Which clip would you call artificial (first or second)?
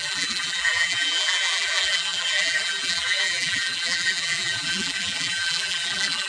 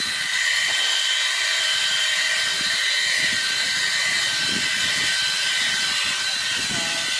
first